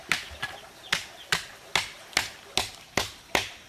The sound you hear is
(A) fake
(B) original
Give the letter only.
B